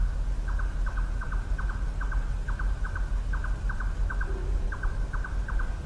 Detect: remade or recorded recorded